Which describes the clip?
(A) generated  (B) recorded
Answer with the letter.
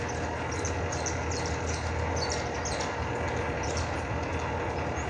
B